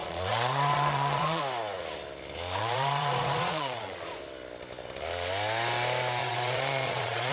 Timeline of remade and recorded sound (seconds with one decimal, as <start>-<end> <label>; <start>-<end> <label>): 0.0-1.4 remade; 1.4-2.6 recorded; 2.6-4.2 remade; 4.2-6.2 recorded; 6.2-7.3 remade